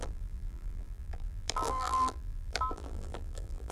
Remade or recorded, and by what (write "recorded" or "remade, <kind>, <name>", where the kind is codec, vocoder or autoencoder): remade, vocoder, BigVGAN v2